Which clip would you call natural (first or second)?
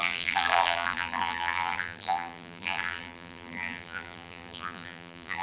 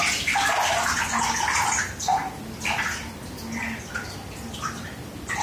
second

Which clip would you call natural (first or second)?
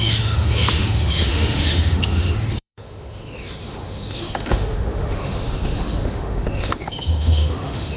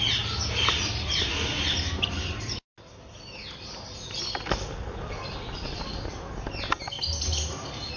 second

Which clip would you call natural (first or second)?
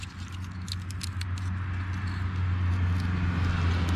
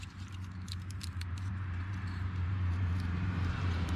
first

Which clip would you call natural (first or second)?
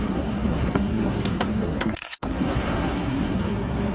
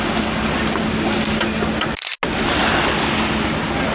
second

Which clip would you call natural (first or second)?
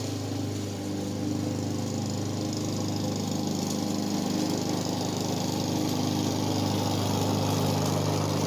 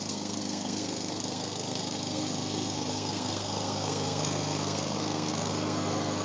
first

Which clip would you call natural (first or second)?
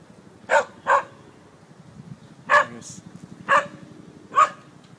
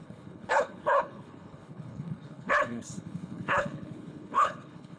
first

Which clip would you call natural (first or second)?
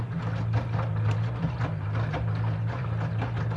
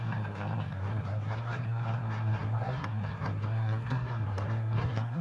first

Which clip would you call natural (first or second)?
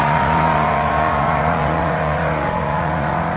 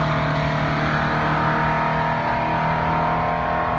second